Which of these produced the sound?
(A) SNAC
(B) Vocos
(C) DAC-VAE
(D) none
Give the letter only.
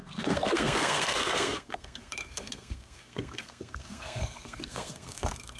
A